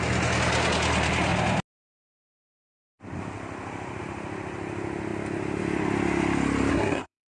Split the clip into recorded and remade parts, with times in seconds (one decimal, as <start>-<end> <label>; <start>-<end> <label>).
0.0-6.7 recorded; 6.7-7.3 remade

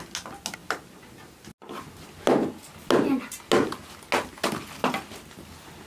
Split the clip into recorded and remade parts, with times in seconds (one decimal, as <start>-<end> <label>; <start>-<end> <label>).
0.0-5.9 recorded

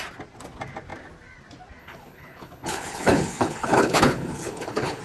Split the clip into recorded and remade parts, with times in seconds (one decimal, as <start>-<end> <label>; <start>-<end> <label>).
0.0-1.8 recorded; 1.8-5.0 remade

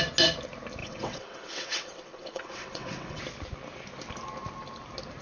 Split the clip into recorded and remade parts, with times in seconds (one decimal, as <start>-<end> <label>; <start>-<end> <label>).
0.0-0.8 recorded; 0.8-3.2 remade; 3.2-5.2 recorded